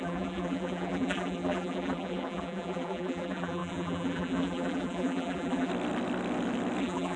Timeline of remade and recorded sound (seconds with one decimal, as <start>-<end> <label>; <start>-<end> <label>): 0.0-5.7 remade; 5.7-6.8 recorded; 6.8-7.2 remade